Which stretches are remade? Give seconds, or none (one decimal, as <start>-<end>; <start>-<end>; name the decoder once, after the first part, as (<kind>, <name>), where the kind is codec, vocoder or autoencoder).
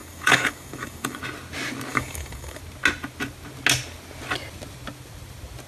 0.0-1.2 (codec, DAC); 1.9-2.6